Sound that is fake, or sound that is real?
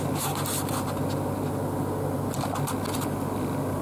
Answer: real